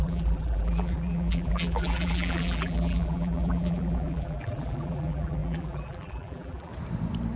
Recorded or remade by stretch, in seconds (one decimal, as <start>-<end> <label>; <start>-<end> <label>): 0.0-6.7 remade; 6.7-7.4 recorded